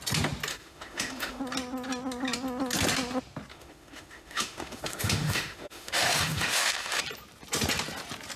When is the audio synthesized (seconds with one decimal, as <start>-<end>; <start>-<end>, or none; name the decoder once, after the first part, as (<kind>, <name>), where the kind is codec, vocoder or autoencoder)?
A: 0.5-1.4 (autoencoder, DAC-VAE); 3.5-7.0